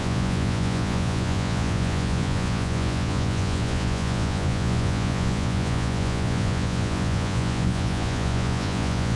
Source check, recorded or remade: remade